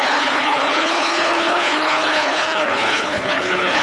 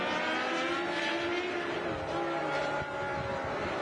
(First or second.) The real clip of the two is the second